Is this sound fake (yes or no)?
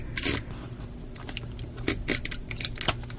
no